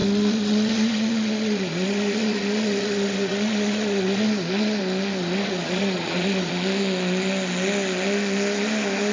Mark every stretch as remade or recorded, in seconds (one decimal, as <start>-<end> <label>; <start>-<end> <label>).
0.0-4.8 remade; 4.8-5.2 recorded; 5.2-6.5 remade; 6.5-9.1 recorded